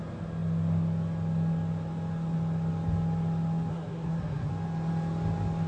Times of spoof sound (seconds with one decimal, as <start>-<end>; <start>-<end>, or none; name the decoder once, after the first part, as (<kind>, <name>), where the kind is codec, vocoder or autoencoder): 3.7-4.5 (codec, SNAC)